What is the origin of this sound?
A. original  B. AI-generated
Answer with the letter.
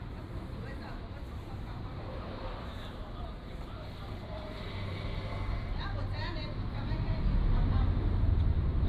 B